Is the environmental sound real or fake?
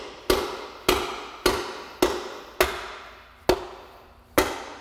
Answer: real